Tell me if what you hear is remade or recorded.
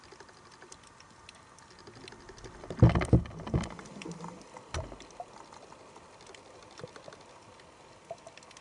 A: recorded